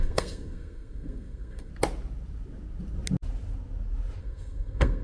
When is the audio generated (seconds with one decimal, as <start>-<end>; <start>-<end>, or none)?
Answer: 0.0-1.7; 4.2-5.0